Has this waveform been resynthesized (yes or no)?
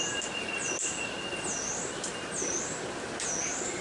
no